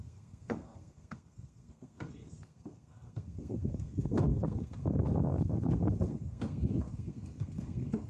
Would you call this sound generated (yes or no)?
yes